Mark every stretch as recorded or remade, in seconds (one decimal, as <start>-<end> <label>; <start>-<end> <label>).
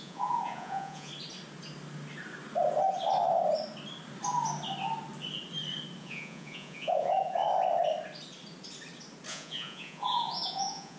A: 0.0-1.1 remade; 1.1-6.0 recorded; 6.0-7.4 remade; 7.4-9.3 recorded; 9.3-11.0 remade